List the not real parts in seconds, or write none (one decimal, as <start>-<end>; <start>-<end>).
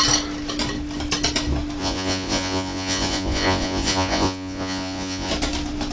1.8-5.3